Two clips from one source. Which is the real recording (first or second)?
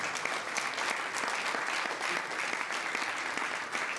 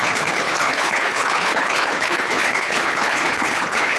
first